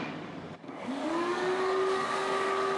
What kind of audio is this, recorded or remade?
remade